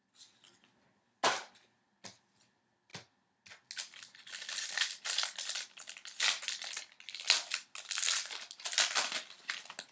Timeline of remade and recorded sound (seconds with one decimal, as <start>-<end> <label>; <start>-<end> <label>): 0.0-9.9 recorded